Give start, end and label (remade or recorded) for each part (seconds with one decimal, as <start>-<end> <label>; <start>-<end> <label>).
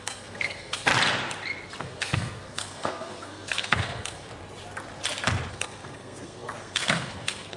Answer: 0.0-0.9 remade; 0.9-1.8 recorded; 1.8-4.3 remade; 4.3-5.5 recorded; 5.5-7.6 remade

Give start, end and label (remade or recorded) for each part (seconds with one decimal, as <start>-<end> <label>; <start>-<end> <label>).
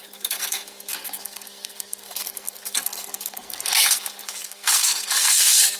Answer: 0.0-5.8 remade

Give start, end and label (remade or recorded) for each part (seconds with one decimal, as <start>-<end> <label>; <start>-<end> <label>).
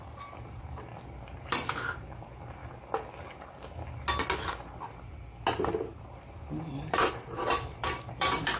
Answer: 0.0-0.9 remade; 0.9-1.4 recorded; 1.4-2.6 remade; 2.6-5.6 recorded; 5.6-8.6 remade